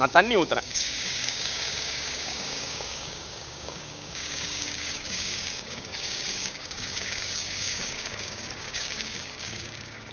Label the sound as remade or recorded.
remade